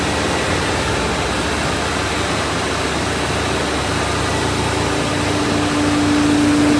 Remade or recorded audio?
recorded